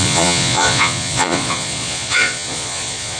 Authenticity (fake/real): fake